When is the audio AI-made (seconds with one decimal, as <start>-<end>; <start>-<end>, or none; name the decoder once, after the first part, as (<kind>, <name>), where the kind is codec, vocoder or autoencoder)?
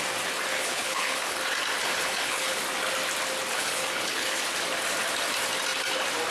0.5-1.4 (codec, HILCodec); 1.8-2.6; 3.5-4.4